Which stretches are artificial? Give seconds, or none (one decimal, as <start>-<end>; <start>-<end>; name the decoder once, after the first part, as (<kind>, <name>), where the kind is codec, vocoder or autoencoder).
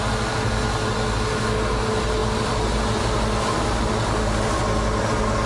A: none